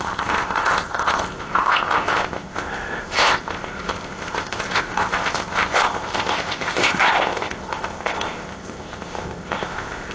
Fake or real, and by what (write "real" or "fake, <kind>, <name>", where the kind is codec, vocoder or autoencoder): fake, codec, ZipCodec